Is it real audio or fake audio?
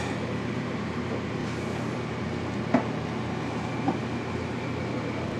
real